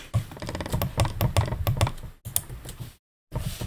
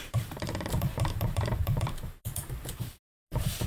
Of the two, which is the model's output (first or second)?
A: second